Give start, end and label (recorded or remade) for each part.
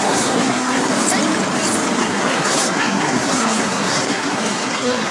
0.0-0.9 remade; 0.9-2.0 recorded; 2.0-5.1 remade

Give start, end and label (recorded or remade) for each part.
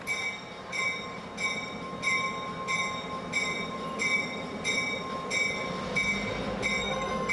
0.0-6.8 recorded; 6.8-7.3 remade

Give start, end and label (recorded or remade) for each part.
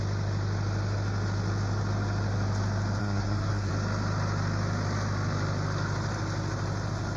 0.0-3.0 recorded; 3.0-3.7 remade; 3.7-7.2 recorded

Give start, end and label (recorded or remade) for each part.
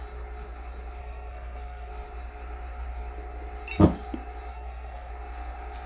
0.0-1.0 recorded; 1.0-1.9 remade; 1.9-4.5 recorded; 4.5-5.1 remade; 5.1-5.9 recorded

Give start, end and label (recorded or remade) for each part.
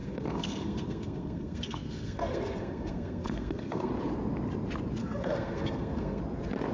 0.0-3.9 remade; 3.9-5.0 recorded; 5.0-6.2 remade; 6.2-6.7 recorded